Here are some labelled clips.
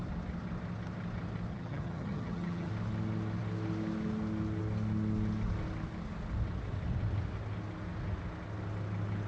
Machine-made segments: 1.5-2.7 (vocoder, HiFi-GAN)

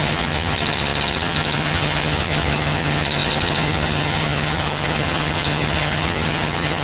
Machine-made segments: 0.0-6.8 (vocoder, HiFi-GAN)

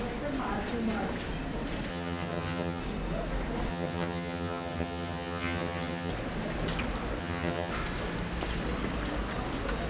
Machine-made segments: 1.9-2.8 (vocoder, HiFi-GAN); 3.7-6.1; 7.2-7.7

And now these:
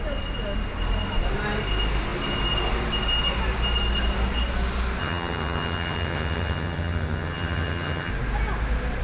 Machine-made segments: 5.0-8.1 (vocoder, HiFi-GAN)

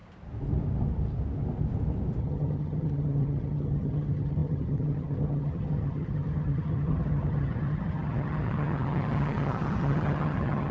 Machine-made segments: 2.2-10.7 (vocoder, HiFi-GAN)

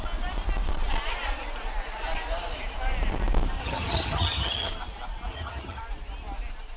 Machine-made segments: 3.6-4.7 (vocoder, HiFi-GAN); 5.3-5.8

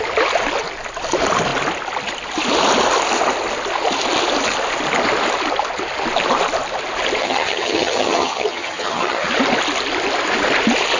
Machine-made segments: 7.2-9.3 (vocoder, HiFi-GAN)